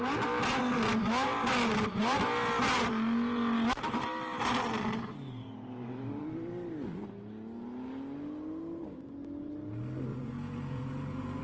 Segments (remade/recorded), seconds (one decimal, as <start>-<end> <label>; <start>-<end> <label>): 0.0-10.1 recorded; 10.1-11.4 remade